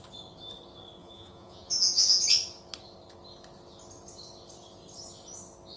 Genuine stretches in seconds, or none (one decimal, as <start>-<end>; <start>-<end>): 0.0-1.0; 2.2-5.8